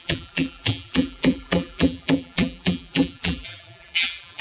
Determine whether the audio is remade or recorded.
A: remade